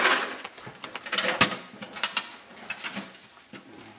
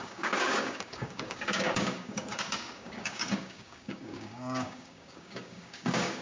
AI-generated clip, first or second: second